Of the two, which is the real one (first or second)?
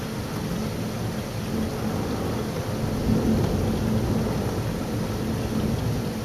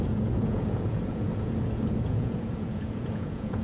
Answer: first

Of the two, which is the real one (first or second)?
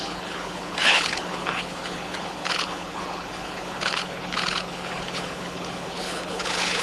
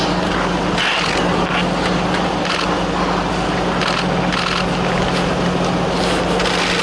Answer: second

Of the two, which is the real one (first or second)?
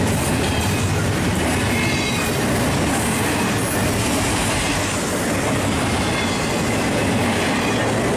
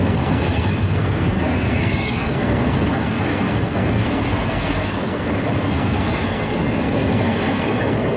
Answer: first